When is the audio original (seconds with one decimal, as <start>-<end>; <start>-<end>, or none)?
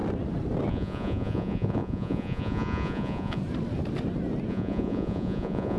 0.0-0.7; 3.4-4.5